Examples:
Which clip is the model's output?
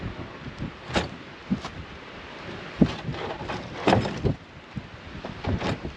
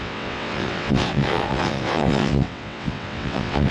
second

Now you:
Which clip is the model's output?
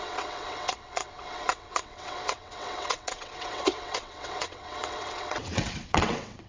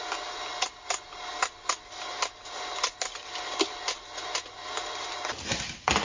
first